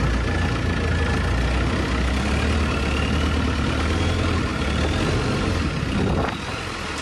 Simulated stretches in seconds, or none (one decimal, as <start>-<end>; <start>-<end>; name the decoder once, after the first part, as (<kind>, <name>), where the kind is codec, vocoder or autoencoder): none